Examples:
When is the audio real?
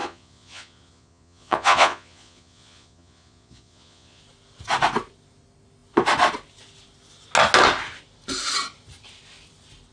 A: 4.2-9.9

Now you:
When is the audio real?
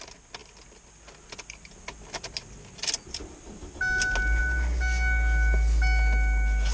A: 0.0-6.7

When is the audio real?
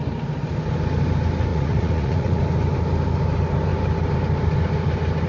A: 0.0-1.5; 2.4-5.3